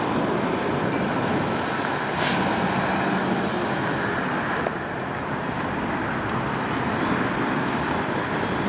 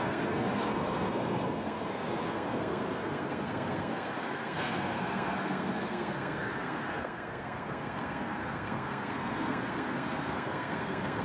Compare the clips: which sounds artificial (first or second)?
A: second